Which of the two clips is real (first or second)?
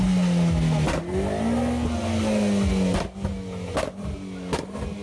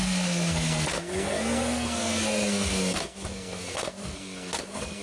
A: first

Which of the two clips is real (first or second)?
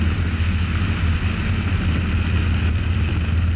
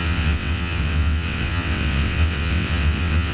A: first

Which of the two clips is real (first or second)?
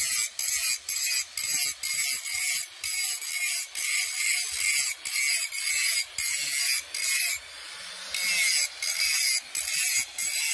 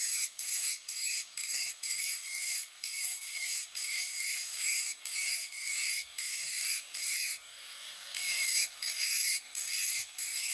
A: first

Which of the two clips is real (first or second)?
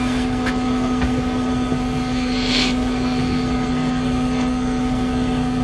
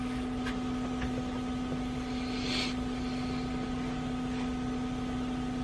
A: second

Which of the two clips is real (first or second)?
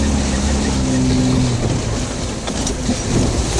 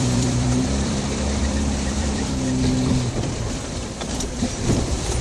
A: first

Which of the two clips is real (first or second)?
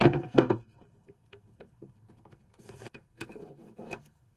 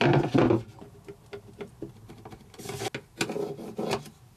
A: second